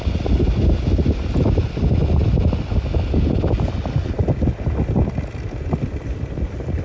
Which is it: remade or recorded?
recorded